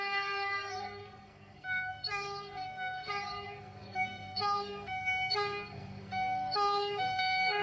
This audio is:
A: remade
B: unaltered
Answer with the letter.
A